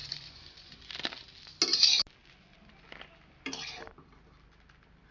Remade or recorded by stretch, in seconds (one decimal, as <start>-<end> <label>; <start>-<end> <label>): 0.0-0.9 remade; 0.9-5.1 recorded